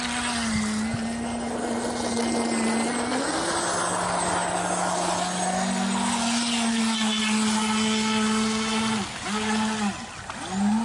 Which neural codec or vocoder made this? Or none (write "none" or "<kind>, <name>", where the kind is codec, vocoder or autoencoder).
none